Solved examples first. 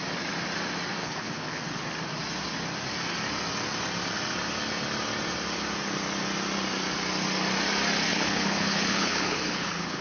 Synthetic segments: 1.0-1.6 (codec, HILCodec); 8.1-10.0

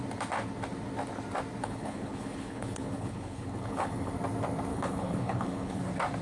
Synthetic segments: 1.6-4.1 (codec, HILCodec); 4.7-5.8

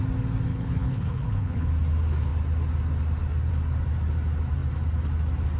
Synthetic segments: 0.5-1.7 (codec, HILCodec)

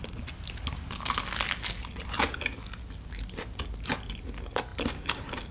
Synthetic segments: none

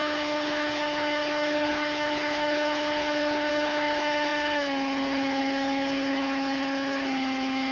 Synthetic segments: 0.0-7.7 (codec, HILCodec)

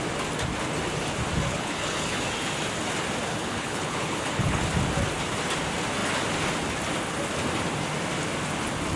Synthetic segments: 1.5-2.2 (codec, HILCodec); 3.3-4.6